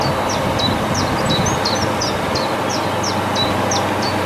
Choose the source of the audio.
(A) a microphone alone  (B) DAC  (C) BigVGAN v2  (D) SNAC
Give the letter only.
A